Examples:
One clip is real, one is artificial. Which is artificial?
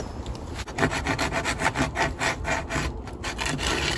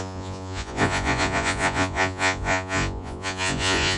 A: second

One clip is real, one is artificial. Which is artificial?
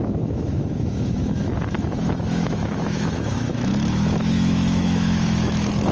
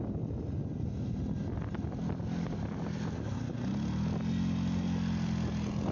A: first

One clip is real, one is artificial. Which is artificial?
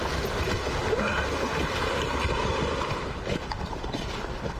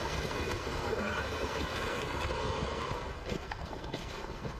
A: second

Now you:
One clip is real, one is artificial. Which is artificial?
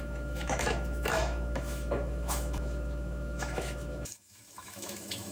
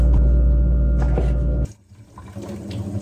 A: first